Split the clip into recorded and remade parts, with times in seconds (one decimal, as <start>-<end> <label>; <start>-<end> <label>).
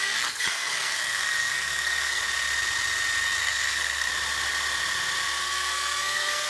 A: 0.0-2.2 remade; 2.2-3.4 recorded; 3.4-4.1 remade; 4.1-5.4 recorded; 5.4-6.5 remade